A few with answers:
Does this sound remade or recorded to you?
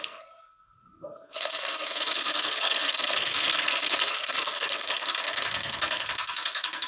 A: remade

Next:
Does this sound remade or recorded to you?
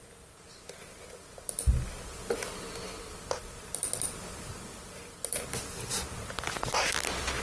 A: recorded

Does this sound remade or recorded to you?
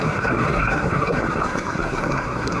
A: remade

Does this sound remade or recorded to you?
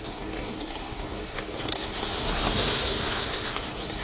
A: remade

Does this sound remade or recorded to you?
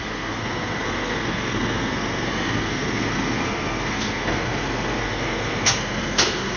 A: remade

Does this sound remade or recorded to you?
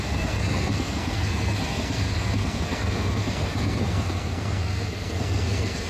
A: remade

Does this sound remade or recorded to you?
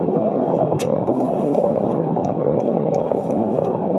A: remade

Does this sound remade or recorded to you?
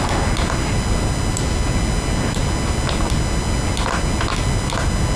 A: recorded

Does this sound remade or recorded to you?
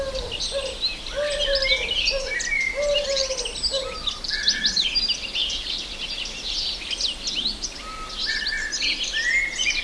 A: recorded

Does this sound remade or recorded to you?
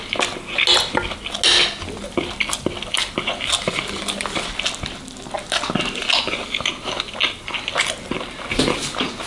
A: recorded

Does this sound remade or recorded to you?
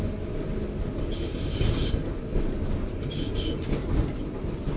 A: recorded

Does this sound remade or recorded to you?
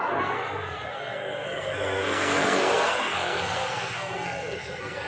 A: remade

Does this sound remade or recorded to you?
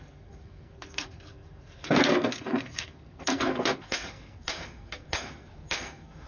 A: remade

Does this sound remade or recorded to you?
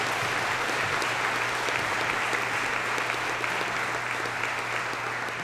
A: recorded